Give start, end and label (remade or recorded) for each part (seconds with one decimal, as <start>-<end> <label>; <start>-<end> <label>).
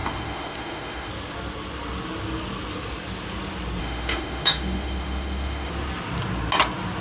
0.0-1.1 remade; 1.1-3.8 recorded; 3.8-5.7 remade; 5.7-7.0 recorded